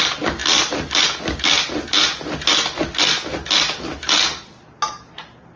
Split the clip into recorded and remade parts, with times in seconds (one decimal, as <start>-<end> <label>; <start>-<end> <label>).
0.0-5.6 recorded